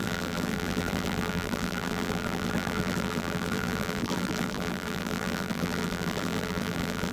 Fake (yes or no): yes